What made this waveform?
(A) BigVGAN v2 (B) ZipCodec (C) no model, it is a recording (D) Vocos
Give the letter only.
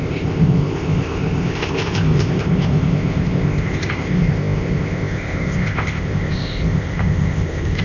B